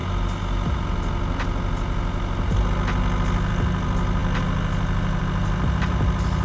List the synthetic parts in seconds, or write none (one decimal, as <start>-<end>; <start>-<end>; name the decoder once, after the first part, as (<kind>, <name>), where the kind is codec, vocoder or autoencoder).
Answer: none